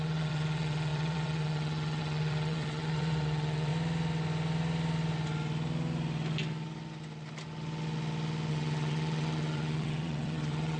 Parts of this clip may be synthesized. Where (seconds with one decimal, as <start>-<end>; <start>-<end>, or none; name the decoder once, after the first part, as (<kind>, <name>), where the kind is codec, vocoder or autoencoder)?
0.0-3.7 (vocoder, WaveNeXt); 8.5-10.8